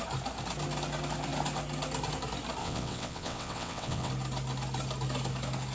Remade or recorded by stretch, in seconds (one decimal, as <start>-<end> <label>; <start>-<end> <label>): 0.0-2.6 recorded; 2.6-4.1 remade; 4.1-5.7 recorded